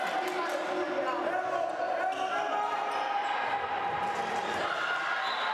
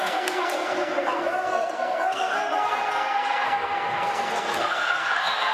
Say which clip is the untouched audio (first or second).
first